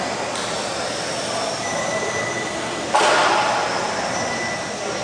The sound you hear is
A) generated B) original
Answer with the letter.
B